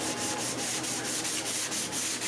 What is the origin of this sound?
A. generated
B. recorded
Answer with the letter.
B